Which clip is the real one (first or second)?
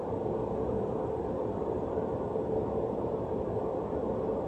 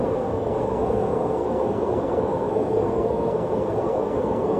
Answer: first